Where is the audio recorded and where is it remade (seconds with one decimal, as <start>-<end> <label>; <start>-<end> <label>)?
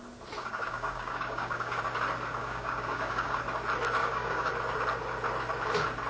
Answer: 0.0-0.4 recorded; 0.4-1.8 remade; 1.8-2.4 recorded; 2.4-3.4 remade; 3.4-4.0 recorded; 4.0-4.5 remade; 4.5-6.1 recorded